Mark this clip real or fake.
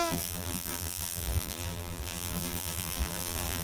fake